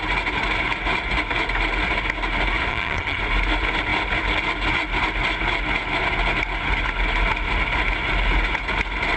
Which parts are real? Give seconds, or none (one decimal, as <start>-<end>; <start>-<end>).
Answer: 0.0-2.7; 3.2-9.2